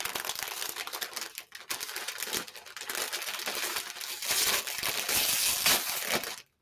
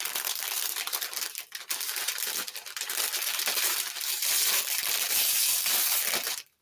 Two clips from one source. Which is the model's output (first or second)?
second